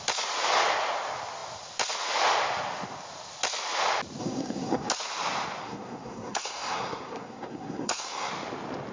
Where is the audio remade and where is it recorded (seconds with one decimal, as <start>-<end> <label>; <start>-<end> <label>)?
0.0-4.2 recorded; 4.2-4.9 remade; 4.9-5.6 recorded; 5.6-8.3 remade; 8.3-8.9 recorded